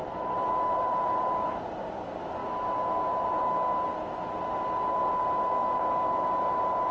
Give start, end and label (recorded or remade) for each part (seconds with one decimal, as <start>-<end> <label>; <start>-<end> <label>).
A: 0.0-1.8 remade; 1.8-6.9 recorded